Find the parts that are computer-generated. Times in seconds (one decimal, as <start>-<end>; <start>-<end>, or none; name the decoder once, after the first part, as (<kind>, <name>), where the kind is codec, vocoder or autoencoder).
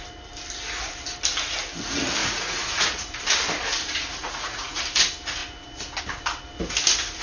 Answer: 2.2-3.1 (vocoder, Vocos); 4.2-4.8